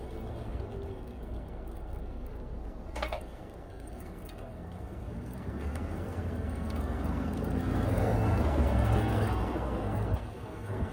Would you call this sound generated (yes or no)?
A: yes